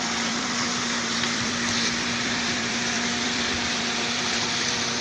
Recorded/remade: remade